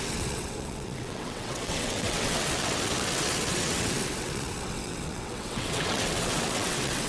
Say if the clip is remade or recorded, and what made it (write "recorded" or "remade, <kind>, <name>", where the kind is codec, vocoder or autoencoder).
remade, vocoder, WaveNeXt